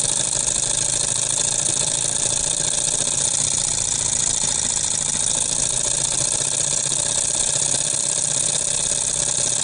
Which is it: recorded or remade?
recorded